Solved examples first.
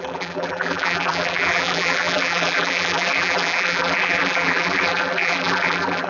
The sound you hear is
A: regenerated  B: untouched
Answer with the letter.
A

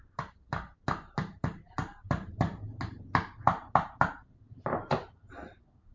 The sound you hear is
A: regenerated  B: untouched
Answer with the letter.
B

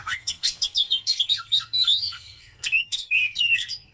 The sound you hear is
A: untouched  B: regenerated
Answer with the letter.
B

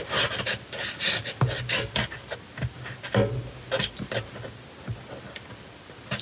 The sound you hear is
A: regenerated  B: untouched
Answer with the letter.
B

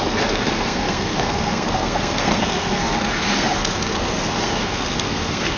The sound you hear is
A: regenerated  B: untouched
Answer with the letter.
A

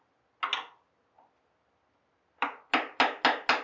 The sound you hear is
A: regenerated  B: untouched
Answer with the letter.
B